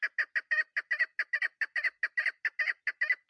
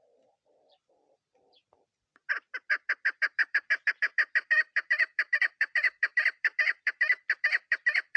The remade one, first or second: second